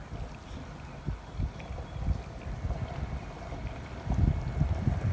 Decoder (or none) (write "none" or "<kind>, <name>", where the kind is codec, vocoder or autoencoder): none